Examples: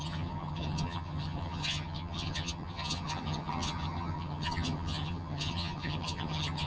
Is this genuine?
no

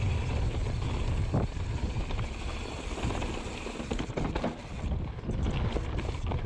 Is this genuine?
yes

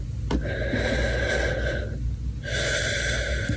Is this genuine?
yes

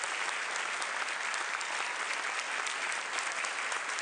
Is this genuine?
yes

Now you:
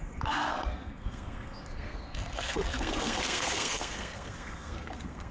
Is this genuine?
no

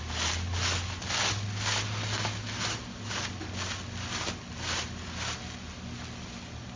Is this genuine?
yes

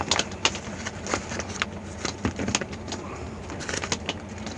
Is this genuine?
yes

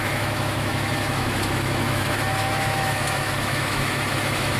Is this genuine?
no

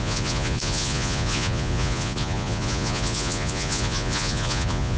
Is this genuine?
no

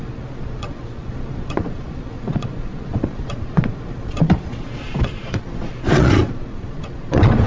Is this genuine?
no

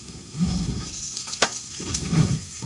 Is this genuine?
no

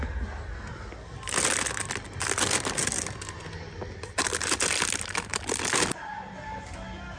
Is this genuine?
yes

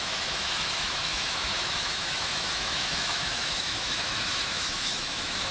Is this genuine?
no